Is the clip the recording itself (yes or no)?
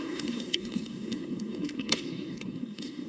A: no